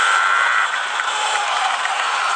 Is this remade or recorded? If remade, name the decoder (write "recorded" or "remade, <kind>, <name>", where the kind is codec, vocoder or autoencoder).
remade, vocoder, BigVGAN v2